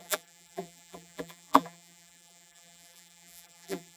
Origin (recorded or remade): remade